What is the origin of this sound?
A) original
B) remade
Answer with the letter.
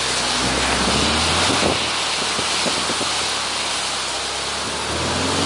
A